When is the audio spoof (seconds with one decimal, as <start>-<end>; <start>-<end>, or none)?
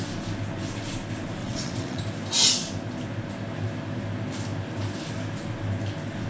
1.4-2.0